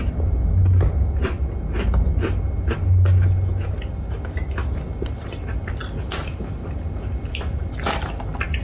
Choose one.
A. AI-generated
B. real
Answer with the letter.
B